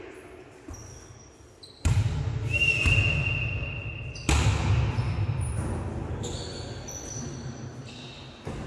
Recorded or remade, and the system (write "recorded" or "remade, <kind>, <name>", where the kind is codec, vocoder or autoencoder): recorded